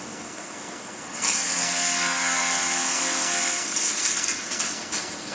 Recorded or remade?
remade